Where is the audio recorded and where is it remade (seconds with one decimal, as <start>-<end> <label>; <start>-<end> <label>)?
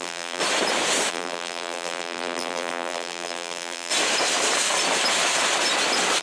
0.0-0.4 remade; 0.4-1.1 recorded; 1.1-3.9 remade; 3.9-6.2 recorded